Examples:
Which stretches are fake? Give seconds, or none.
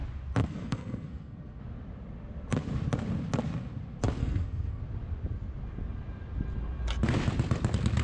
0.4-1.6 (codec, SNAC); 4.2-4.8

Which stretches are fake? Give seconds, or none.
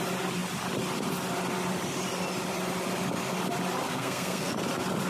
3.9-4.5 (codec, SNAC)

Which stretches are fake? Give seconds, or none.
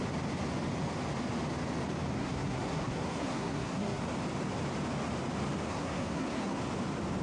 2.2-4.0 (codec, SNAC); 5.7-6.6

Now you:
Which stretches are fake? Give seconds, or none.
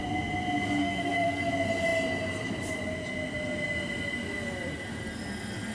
0.8-1.5 (codec, SNAC)